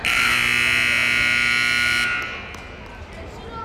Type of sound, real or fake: real